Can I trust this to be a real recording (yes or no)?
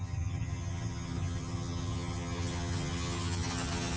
no